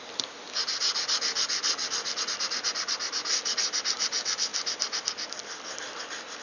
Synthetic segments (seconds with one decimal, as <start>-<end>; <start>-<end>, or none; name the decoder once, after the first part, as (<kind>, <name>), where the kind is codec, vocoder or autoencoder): none